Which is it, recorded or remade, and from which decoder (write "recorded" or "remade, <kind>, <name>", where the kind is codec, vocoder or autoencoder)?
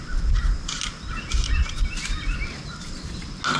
recorded